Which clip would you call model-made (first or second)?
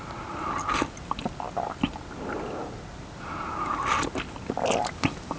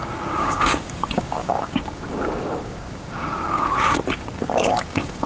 second